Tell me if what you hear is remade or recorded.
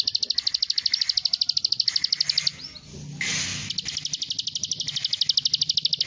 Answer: recorded